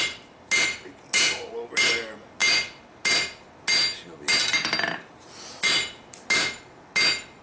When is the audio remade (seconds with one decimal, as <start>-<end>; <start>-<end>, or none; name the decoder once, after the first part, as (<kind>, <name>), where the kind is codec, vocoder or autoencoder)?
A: none